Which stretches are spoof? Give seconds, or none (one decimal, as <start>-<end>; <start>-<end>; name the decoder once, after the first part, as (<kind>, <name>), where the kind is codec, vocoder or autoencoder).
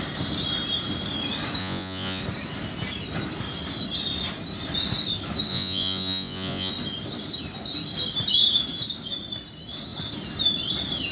1.6-2.2 (vocoder, Vocos); 5.5-6.7